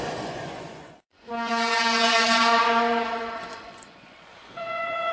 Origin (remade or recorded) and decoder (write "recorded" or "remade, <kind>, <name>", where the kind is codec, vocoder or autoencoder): remade, vocoder, Vocos